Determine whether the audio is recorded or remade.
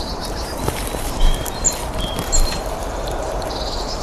remade